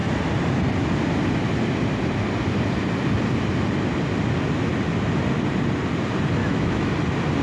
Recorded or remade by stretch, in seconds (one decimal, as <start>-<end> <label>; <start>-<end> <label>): 0.0-6.4 recorded; 6.4-6.9 remade; 6.9-7.4 recorded